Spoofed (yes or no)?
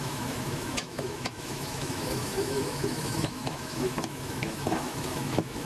yes